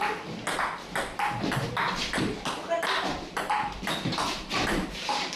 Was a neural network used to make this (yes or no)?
no